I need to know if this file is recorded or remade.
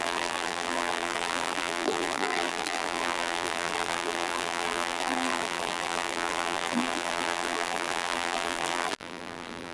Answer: remade